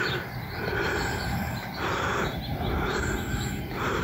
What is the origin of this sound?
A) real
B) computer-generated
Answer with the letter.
A